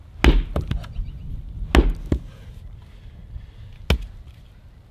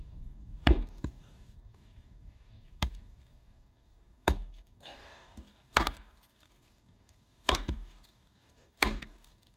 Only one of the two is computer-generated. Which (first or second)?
second